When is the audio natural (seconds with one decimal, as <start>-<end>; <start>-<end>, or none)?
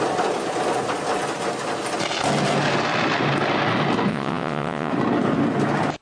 0.0-4.1; 4.9-6.0